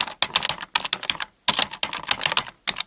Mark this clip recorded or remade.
recorded